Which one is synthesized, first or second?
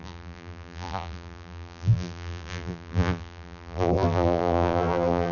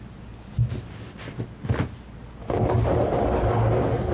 first